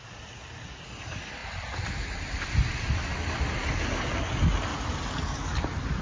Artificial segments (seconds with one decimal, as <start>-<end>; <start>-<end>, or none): 3.1-4.3; 4.7-6.0